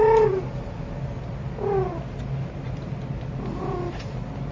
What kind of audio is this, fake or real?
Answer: real